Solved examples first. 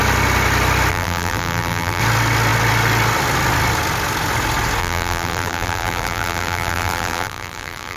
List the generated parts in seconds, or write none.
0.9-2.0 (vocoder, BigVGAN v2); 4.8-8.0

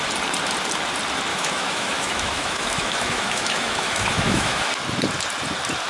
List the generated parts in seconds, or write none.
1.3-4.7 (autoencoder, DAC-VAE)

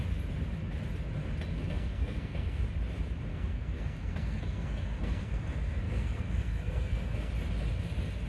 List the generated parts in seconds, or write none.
1.5-2.6 (codec, SNAC); 3.3-7.3

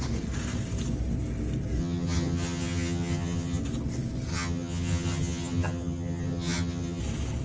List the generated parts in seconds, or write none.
1.8-3.6 (vocoder, HiFi-GAN); 4.3-7.0